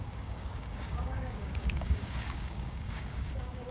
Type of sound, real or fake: fake